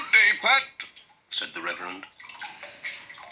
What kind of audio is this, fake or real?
real